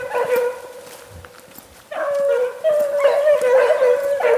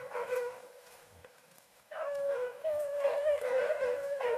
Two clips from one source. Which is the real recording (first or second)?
first